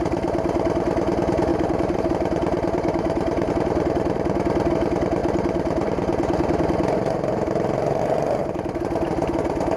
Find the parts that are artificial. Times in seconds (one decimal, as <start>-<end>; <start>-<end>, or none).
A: 1.5-3.5; 8.4-9.1